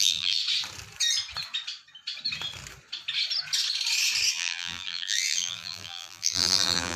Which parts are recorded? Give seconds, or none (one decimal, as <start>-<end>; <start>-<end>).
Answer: 0.4-4.3